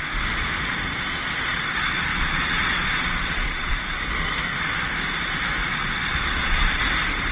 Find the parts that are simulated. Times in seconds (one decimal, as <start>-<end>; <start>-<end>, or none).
2.1-3.7; 6.1-6.8